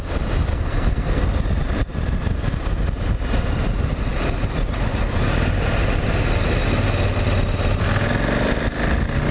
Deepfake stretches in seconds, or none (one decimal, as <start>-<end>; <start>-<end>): 0.5-1.2